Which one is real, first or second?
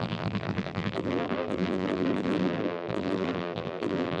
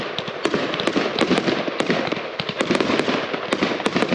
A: second